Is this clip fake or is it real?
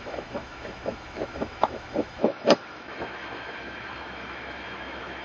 fake